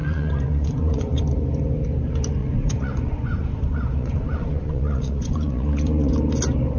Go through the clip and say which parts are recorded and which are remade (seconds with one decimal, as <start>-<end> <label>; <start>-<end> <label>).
0.0-1.2 remade; 1.2-2.4 recorded; 2.4-6.1 remade; 6.1-6.8 recorded